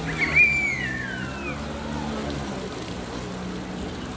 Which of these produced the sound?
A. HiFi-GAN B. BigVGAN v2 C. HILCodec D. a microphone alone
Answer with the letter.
D